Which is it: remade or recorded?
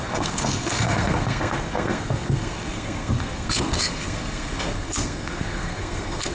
remade